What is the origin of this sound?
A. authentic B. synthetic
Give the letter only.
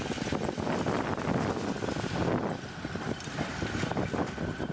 A